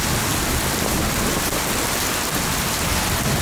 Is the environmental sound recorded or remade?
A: recorded